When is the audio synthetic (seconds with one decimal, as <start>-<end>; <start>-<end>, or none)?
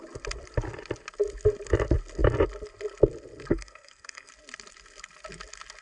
3.5-4.3